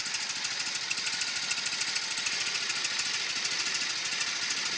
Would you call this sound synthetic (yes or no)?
no